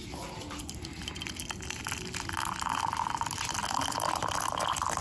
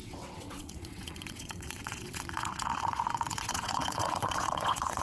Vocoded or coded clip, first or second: second